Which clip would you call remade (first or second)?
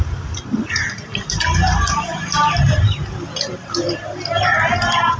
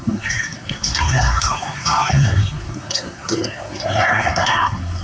second